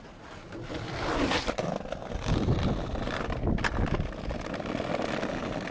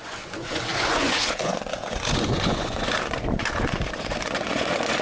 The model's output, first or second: second